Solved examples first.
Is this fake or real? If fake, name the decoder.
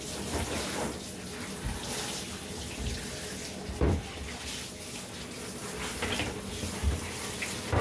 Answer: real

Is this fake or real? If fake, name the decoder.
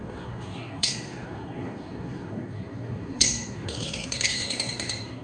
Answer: fake, codec, SNAC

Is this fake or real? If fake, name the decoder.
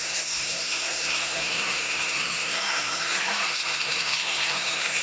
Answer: fake, codec, SNAC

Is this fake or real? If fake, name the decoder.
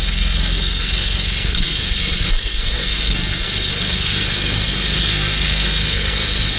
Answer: fake, codec, SNAC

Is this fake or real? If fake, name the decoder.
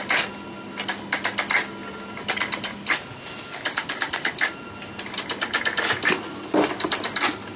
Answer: real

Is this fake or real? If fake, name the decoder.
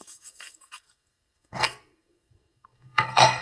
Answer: fake, codec, SNAC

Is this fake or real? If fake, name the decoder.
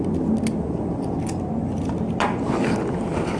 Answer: real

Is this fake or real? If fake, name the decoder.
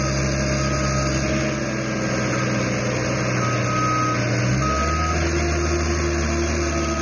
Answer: real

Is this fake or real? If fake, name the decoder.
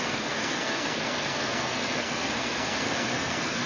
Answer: fake, codec, SNAC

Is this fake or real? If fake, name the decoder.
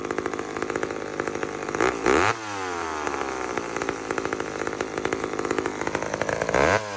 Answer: real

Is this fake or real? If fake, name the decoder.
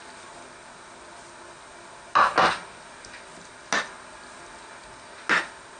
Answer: real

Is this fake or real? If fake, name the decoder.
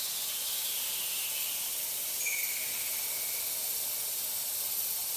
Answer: real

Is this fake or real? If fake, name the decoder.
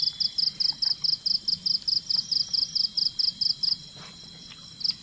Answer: real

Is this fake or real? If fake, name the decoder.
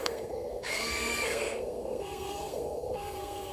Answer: fake, codec, SNAC